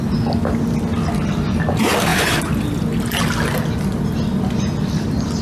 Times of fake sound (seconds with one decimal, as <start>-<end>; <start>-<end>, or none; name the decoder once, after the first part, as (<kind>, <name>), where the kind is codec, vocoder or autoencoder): none